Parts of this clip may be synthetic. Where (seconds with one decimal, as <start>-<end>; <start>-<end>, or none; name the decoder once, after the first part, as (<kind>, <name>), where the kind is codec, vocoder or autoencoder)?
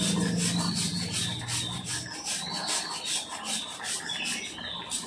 none